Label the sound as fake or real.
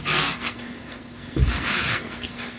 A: fake